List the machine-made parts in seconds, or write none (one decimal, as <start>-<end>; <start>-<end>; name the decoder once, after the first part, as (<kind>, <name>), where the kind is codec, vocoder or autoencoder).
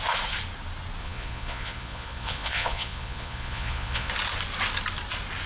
1.0-4.1 (vocoder, Vocos)